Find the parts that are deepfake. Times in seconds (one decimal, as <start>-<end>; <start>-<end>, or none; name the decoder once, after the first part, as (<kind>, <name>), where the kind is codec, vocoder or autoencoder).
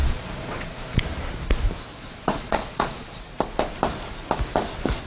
0.0-1.0 (vocoder, Vocos); 1.9-3.3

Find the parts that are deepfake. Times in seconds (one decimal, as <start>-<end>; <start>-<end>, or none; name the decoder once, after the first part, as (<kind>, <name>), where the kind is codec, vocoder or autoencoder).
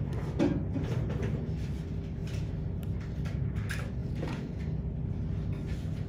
4.0-4.6 (vocoder, Vocos)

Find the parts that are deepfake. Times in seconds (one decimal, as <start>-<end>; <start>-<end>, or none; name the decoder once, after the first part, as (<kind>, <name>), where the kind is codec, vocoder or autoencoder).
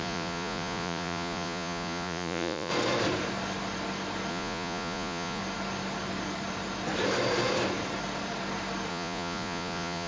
0.0-2.7 (vocoder, Vocos); 4.3-5.4; 8.9-10.1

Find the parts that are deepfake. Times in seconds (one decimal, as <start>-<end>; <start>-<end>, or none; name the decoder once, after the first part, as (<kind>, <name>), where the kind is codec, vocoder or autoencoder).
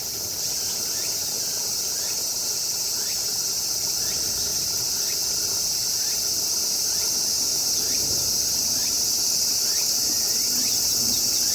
none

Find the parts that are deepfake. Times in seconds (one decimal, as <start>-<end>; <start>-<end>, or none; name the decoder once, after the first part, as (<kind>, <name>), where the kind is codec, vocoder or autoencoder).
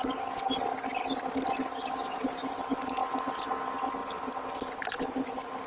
none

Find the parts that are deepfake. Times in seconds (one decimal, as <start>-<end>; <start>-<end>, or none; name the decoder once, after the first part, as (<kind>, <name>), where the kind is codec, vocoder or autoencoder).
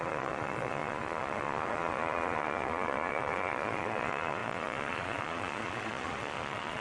0.0-6.8 (vocoder, Vocos)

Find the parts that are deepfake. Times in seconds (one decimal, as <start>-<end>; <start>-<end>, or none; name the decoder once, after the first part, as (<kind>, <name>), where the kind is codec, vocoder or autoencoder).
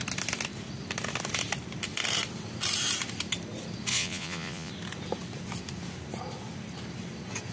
3.9-4.7 (vocoder, Vocos)